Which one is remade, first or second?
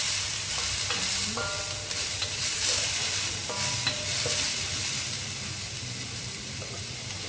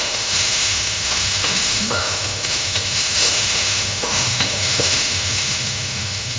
second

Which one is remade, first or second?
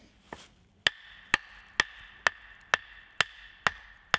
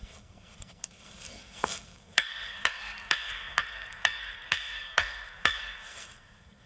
second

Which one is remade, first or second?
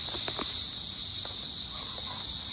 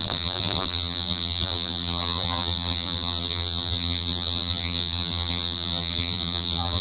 second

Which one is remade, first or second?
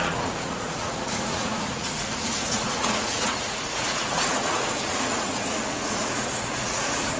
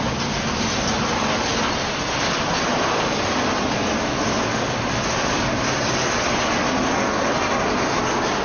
first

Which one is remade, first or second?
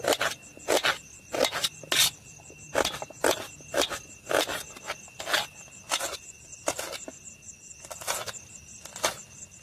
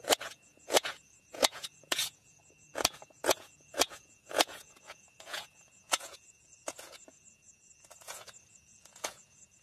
second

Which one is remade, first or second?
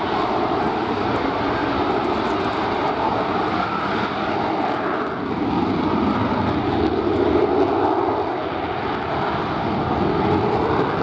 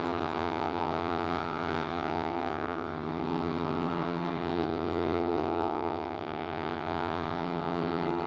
second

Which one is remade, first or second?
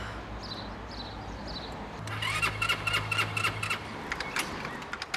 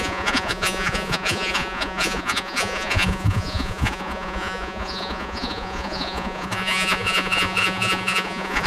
second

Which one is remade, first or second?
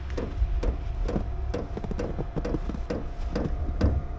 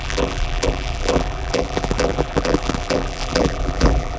second